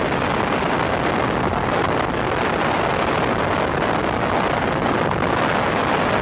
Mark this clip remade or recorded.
recorded